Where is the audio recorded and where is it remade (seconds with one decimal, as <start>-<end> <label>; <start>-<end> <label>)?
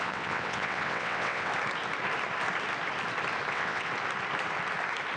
0.0-1.5 remade; 1.5-3.5 recorded; 3.5-3.9 remade; 3.9-5.2 recorded